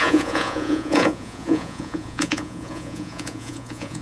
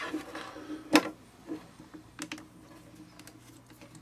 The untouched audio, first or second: second